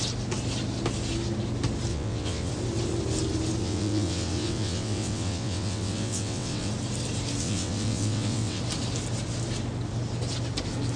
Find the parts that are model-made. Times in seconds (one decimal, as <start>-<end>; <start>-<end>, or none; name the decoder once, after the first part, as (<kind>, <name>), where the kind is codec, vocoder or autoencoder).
1.9-2.5 (vocoder, WaveNeXt); 3.6-6.7; 7.4-8.6